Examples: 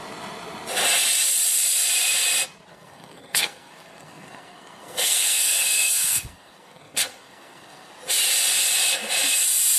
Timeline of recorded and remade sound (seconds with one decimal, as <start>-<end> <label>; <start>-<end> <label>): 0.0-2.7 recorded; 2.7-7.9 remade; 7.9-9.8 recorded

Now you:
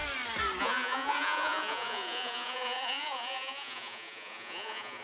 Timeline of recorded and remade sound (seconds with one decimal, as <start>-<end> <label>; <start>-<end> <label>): 0.0-0.6 recorded; 0.6-5.0 remade

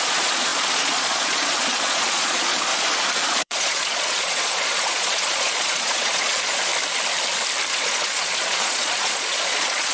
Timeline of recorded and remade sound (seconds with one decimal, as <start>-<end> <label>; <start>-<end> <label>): 0.0-2.7 remade; 2.7-3.3 recorded; 3.3-6.7 remade; 6.7-7.7 recorded; 7.7-9.9 remade

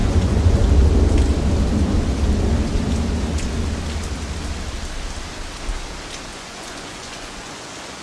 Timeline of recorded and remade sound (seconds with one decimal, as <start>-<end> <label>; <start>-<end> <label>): 0.0-0.7 remade; 0.7-6.3 recorded; 6.3-8.0 remade